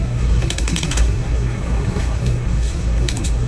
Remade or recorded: remade